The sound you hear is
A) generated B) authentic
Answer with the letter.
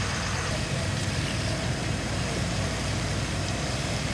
A